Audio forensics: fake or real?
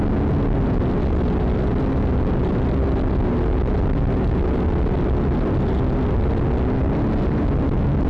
real